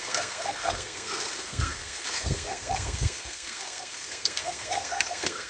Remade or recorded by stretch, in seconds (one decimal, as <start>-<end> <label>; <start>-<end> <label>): 0.0-5.5 remade